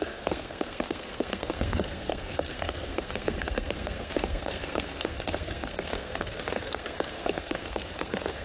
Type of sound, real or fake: fake